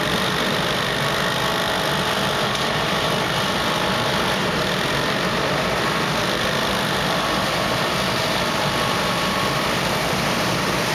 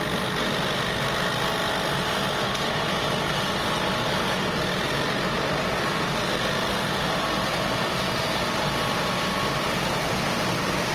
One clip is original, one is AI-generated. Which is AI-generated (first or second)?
first